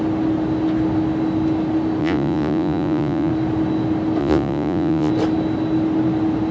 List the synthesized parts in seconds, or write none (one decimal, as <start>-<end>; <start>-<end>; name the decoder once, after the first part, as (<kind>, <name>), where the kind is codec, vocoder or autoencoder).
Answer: 2.0-3.3 (vocoder, Vocos); 4.2-5.1